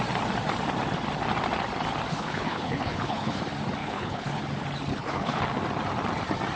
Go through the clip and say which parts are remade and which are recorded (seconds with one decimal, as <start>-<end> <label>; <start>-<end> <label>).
0.0-2.1 recorded; 2.1-3.4 remade; 3.4-3.8 recorded; 3.8-4.4 remade; 4.4-4.9 recorded; 4.9-5.4 remade; 5.4-6.6 recorded